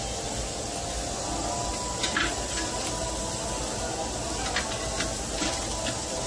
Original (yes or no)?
yes